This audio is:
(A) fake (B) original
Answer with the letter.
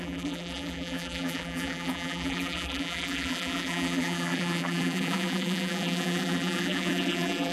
A